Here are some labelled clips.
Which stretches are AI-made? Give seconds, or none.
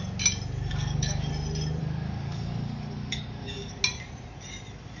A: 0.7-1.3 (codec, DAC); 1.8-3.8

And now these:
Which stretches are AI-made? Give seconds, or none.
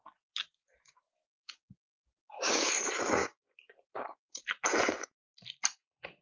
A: 1.2-2.7 (codec, DAC); 3.2-4.4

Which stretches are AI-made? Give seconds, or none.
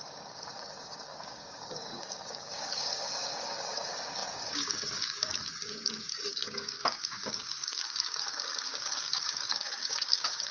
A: 0.0-10.5 (codec, DAC)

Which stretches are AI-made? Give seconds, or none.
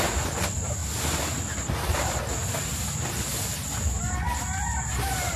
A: none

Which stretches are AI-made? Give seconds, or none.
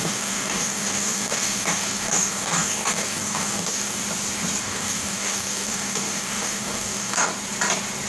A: 0.0-4.0 (codec, DAC); 4.6-7.3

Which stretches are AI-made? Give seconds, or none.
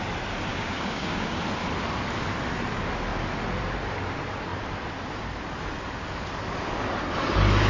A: 0.5-1.4 (codec, DAC)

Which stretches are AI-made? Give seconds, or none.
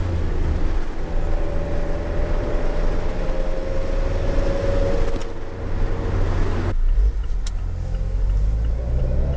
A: none